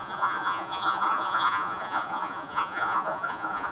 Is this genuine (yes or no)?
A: no